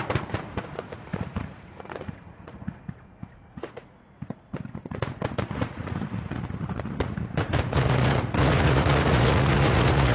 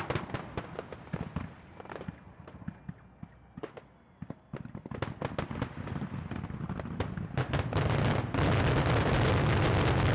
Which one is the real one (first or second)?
second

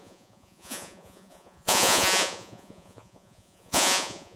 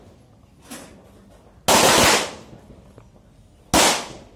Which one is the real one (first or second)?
second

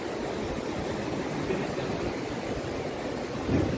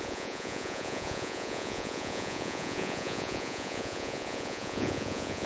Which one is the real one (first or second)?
first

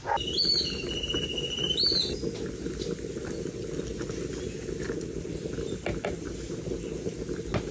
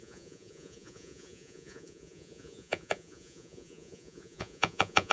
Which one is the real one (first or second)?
first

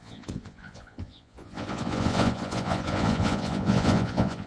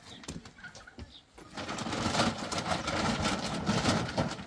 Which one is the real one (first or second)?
second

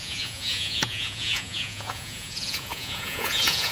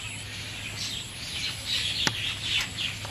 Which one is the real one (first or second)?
second